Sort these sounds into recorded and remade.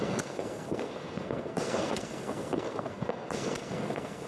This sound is remade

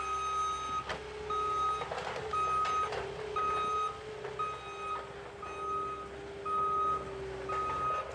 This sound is recorded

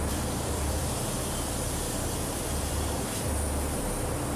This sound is remade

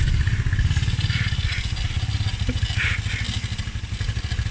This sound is recorded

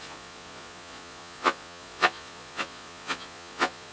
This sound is remade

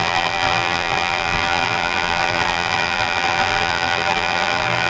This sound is remade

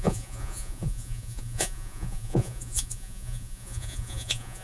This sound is remade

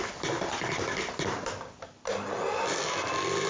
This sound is recorded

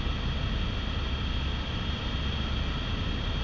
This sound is recorded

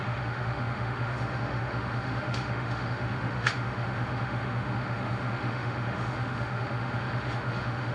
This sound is remade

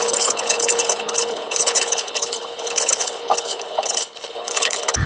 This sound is remade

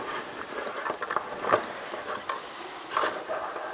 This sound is recorded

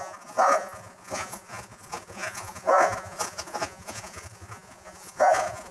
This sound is remade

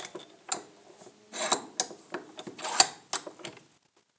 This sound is recorded